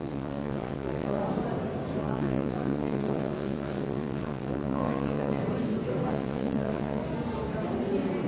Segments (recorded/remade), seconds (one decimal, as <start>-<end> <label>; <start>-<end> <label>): 0.0-1.2 remade; 1.2-2.0 recorded; 2.0-5.4 remade; 5.4-6.1 recorded; 6.1-7.0 remade; 7.0-8.3 recorded